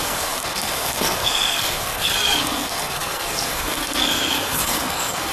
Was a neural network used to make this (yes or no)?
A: yes